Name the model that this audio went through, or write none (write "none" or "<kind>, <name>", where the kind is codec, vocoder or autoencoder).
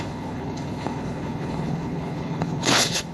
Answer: codec, HILCodec